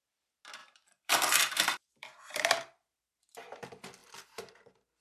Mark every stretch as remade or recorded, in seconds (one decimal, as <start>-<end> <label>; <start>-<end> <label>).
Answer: 0.0-0.6 recorded; 0.6-3.6 remade; 3.6-5.0 recorded